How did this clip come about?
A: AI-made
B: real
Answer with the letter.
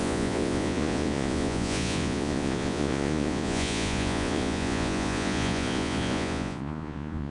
A